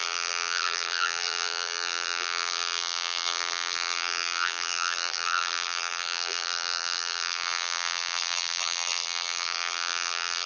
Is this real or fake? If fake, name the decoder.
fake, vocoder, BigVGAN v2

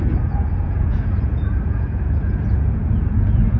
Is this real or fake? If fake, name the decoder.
fake, vocoder, Vocos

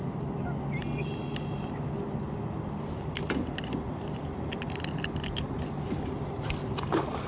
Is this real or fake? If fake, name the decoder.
real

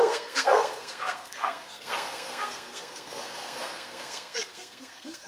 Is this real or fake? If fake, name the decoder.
fake, codec, SNAC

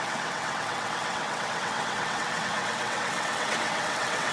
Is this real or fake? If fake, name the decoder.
fake, vocoder, WaveNeXt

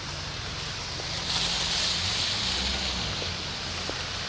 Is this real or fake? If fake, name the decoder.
real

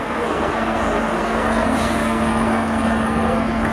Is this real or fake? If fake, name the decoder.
fake, codec, SNAC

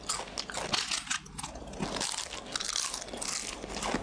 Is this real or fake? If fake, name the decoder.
real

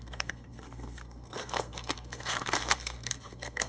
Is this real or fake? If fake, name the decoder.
fake, codec, SNAC